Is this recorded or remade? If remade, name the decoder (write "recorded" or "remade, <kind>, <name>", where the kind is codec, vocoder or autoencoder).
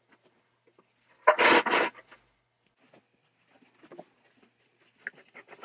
recorded